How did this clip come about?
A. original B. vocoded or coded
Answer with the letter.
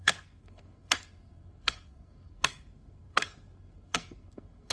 B